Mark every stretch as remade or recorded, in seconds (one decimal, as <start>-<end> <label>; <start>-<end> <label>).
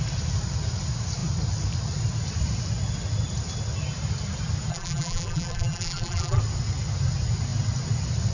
0.0-4.7 recorded; 4.7-6.4 remade; 6.4-8.3 recorded